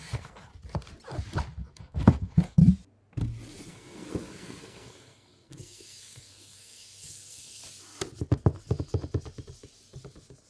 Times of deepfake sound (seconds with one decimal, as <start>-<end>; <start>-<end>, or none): 0.0-0.5; 1.8-2.6; 3.7-7.6